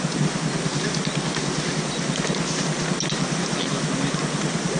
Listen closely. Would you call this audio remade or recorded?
recorded